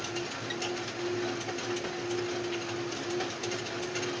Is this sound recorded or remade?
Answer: recorded